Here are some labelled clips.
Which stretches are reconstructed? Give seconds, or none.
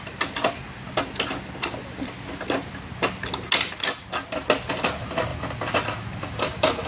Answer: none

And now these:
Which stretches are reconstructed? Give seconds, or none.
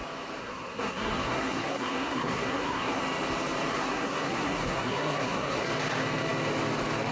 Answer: 0.4-3.0 (codec, SNAC); 3.7-5.7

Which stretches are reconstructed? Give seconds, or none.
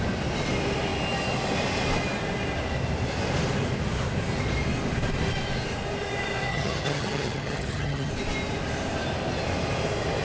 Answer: 6.5-8.1 (vocoder, HiFi-GAN)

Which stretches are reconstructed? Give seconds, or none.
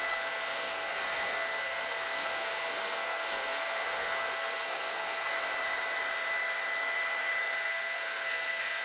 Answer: 0.0-5.3 (codec, SNAC); 7.6-8.8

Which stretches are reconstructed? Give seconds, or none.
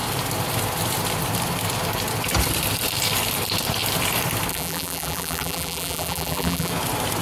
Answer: 4.5-6.7 (vocoder, BigVGAN v2)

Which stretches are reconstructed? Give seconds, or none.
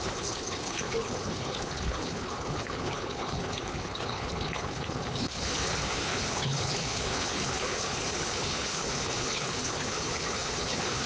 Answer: 0.0-11.1 (codec, HILCodec)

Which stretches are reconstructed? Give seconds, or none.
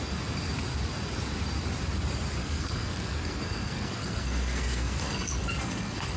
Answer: 2.4-6.2 (codec, SNAC)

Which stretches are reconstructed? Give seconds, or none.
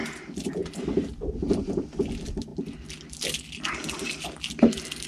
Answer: 0.0-2.5 (vocoder, BigVGAN v2); 3.1-5.1